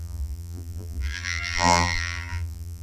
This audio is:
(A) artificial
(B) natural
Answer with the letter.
A